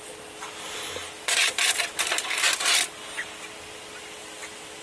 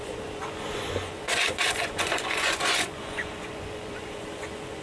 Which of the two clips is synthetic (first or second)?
second